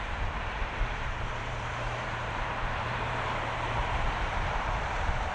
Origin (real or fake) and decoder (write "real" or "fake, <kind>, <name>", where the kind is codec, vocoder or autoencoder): fake, vocoder, BigVGAN v2